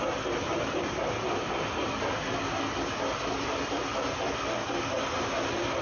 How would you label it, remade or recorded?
recorded